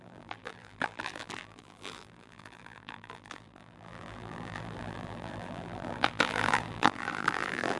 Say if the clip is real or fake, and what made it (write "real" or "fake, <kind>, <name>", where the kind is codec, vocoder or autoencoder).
fake, vocoder, BigVGAN v2